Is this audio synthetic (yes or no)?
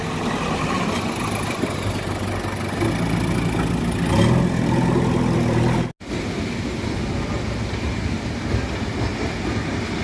no